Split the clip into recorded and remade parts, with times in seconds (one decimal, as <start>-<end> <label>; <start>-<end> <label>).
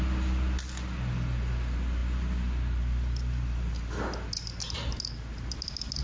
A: 0.0-6.0 recorded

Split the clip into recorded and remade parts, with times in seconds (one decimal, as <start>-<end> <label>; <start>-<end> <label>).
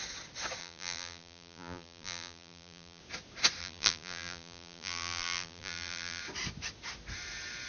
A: 0.0-0.6 recorded; 0.6-3.0 remade; 3.0-3.6 recorded; 3.6-6.2 remade; 6.2-7.7 recorded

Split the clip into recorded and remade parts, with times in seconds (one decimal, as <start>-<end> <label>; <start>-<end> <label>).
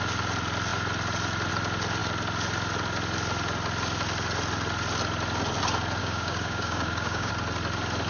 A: 0.0-6.0 recorded; 6.0-7.3 remade; 7.3-8.1 recorded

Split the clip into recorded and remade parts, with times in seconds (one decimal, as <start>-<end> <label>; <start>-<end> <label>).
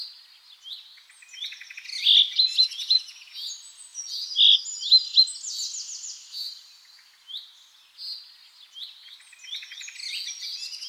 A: 0.0-10.9 recorded